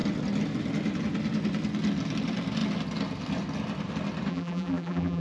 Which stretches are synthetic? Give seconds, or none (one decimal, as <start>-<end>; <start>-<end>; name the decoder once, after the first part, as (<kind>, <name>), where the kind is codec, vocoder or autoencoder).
4.3-5.2 (vocoder, BigVGAN v2)